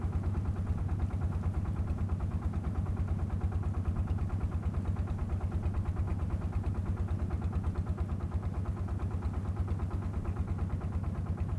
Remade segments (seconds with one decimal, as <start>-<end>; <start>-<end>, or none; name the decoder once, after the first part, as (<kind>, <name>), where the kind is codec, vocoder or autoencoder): none